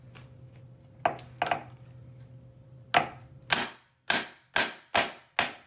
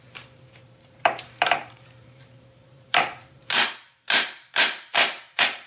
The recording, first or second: first